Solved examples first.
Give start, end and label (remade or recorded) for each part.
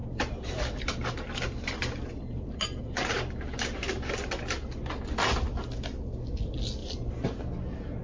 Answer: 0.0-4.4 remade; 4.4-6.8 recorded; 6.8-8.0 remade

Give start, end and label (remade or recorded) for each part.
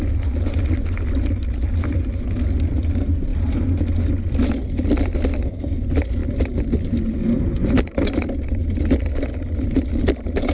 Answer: 0.0-10.5 recorded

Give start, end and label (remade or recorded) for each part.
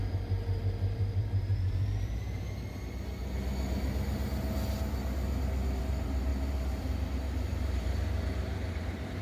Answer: 0.0-3.2 remade; 3.2-5.8 recorded; 5.8-9.2 remade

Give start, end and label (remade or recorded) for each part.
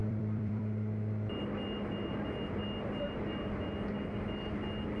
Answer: 0.0-0.6 remade; 0.6-5.0 recorded